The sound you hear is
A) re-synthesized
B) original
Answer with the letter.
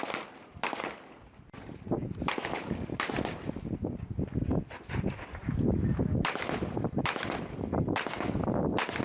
B